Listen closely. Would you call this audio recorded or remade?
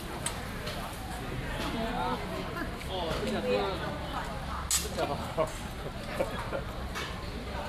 recorded